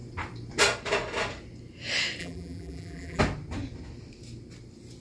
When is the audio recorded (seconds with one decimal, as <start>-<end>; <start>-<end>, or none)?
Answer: 0.0-2.2; 3.2-5.0